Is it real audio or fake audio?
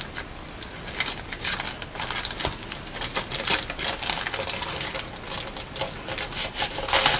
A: real